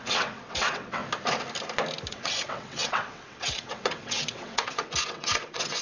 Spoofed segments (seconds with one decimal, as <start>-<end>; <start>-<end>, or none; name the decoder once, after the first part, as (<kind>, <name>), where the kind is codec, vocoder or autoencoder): 0.0-1.0 (vocoder, WaveNeXt); 2.1-5.8